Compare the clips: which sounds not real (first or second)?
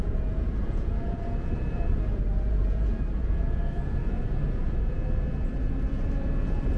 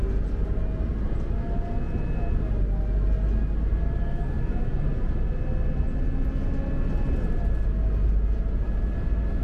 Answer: first